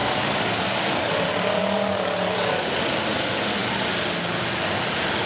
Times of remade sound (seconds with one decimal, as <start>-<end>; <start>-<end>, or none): 0.0-1.1; 1.6-2.8